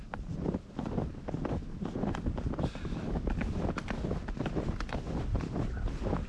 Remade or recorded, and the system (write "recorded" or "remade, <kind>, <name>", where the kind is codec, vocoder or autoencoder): recorded